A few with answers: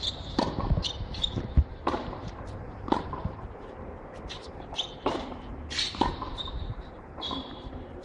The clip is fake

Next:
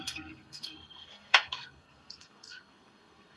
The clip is fake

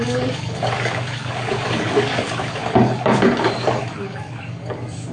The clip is fake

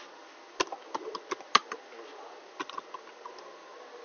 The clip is real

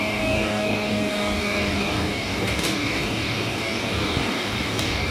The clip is fake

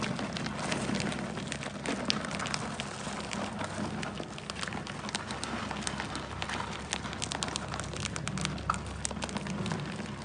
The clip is real